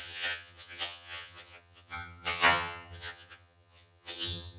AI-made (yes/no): yes